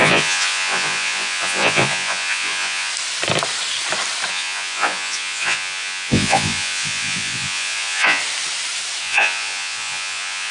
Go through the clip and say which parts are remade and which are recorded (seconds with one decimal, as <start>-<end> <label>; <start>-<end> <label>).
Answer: 0.0-2.9 remade; 2.9-4.3 recorded; 4.3-8.2 remade; 8.2-9.0 recorded; 9.0-10.5 remade